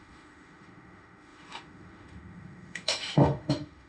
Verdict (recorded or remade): remade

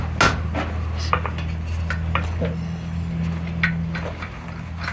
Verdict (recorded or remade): recorded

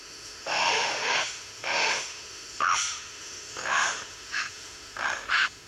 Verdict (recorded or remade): remade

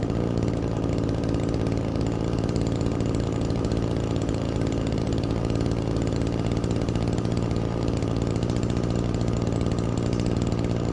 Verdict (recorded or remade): remade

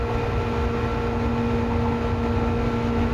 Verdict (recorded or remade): recorded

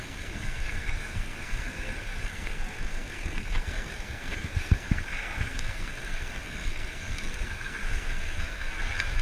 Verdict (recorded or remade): remade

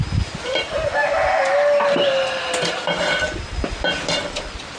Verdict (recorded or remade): recorded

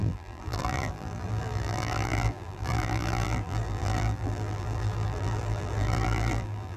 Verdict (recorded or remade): remade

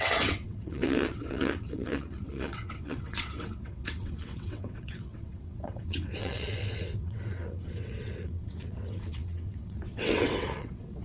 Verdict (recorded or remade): remade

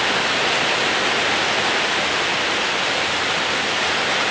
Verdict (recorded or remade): recorded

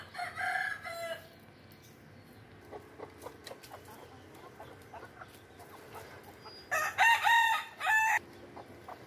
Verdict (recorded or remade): recorded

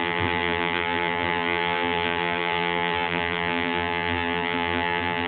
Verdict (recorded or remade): remade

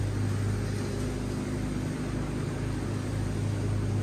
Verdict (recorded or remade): recorded